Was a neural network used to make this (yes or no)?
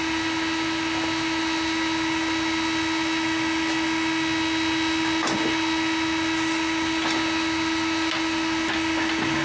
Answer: no